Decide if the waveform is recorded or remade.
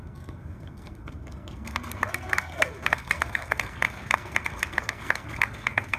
remade